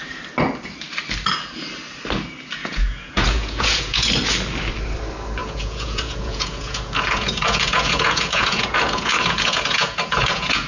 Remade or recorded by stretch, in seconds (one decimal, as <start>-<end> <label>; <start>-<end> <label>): 0.0-2.6 recorded; 2.6-4.1 remade; 4.1-5.4 recorded; 5.4-10.7 remade